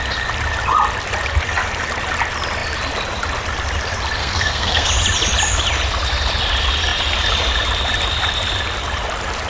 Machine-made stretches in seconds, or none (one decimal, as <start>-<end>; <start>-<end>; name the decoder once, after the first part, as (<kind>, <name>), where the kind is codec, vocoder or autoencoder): 4.2-4.9 (codec, SNAC)